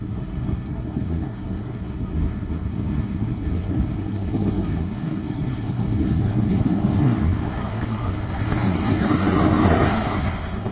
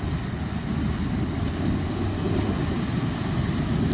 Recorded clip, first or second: second